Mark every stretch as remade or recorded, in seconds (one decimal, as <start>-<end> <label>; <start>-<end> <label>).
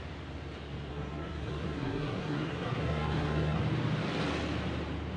0.0-0.9 recorded; 0.9-3.6 remade; 3.6-5.2 recorded